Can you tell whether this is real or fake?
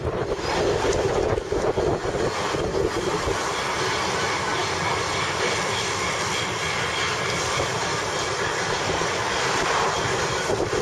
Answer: real